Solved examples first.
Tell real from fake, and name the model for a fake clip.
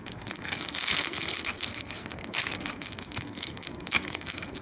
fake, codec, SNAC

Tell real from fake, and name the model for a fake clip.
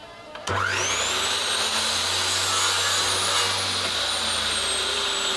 real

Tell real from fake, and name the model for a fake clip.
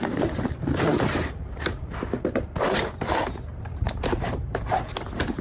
fake, vocoder, BigVGAN v2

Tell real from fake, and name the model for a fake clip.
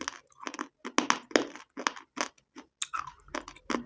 real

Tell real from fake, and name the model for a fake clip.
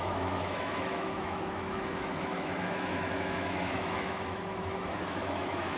fake, autoencoder, DAC-VAE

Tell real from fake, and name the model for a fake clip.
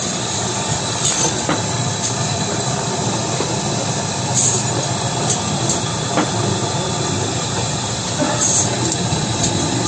real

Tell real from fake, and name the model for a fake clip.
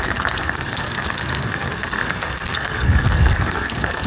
fake, codec, SNAC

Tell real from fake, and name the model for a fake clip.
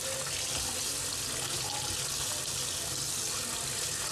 real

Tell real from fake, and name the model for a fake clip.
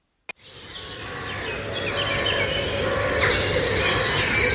real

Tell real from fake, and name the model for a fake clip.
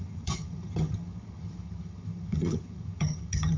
fake, vocoder, HiFi-GAN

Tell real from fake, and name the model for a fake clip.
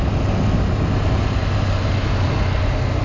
real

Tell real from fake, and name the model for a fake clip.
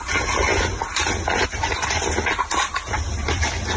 real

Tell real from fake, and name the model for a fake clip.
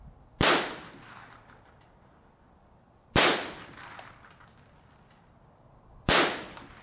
real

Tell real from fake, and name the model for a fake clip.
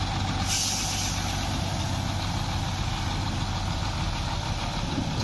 real